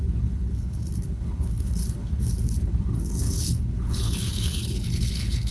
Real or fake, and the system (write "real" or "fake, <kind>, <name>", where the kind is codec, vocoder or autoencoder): fake, codec, HILCodec